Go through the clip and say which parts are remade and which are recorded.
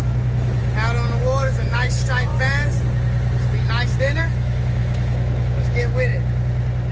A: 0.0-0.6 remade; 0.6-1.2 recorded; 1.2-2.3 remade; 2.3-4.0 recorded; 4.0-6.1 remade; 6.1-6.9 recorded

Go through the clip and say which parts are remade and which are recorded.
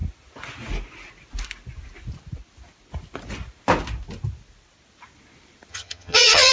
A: 0.0-5.7 recorded; 5.7-6.5 remade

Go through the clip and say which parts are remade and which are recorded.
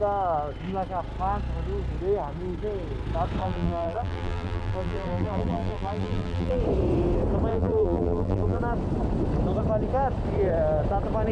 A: 0.0-3.4 recorded; 3.4-6.6 remade; 6.6-7.5 recorded; 7.5-8.6 remade; 8.6-11.3 recorded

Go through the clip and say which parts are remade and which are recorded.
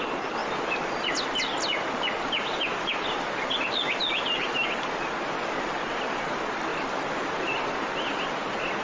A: 0.0-8.8 recorded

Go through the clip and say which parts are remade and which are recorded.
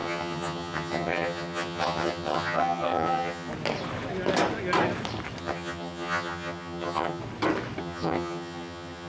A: 0.0-3.5 remade; 3.5-5.4 recorded; 5.4-7.2 remade; 7.2-7.8 recorded; 7.8-9.1 remade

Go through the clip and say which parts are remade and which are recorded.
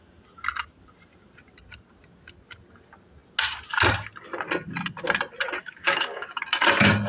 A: 0.0-5.6 recorded; 5.6-6.4 remade; 6.4-7.1 recorded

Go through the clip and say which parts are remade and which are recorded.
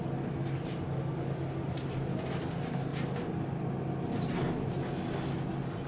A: 0.0-5.9 recorded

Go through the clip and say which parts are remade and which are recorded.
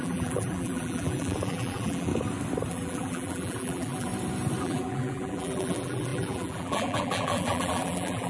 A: 0.0-2.1 remade; 2.1-2.7 recorded; 2.7-4.1 remade; 4.1-4.6 recorded; 4.6-8.3 remade